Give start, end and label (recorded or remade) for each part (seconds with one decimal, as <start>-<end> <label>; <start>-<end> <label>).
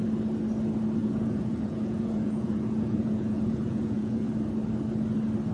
0.0-1.0 recorded; 1.0-4.3 remade; 4.3-5.5 recorded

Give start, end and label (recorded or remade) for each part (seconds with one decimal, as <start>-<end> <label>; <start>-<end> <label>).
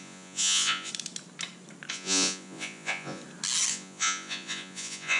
0.0-0.9 remade; 0.9-1.9 recorded; 1.9-3.2 remade; 3.2-3.7 recorded; 3.7-5.2 remade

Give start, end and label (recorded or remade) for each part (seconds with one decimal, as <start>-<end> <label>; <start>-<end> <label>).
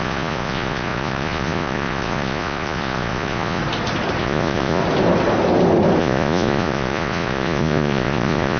0.0-3.6 remade; 3.6-4.2 recorded; 4.2-4.8 remade; 4.8-6.0 recorded; 6.0-8.6 remade